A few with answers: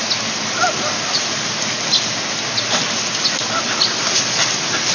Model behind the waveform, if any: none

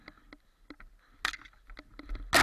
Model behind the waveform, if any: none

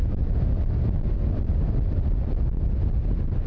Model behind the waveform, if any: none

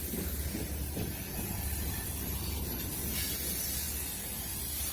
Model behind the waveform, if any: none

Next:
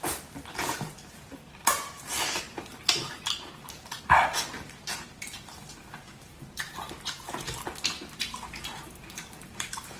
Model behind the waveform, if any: vocoder, BigVGAN v2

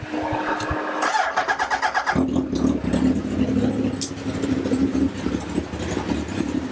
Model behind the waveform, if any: none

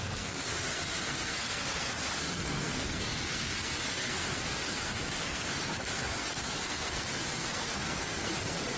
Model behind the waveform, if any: codec, SNAC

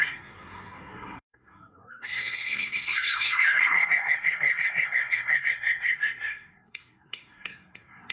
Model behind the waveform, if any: codec, SNAC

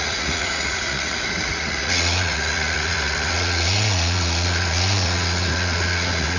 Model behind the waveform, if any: vocoder, Vocos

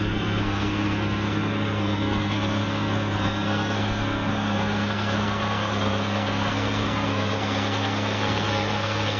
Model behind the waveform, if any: codec, SNAC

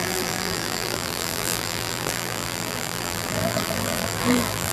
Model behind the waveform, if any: vocoder, BigVGAN v2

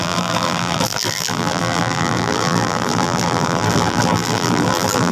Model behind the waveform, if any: vocoder, BigVGAN v2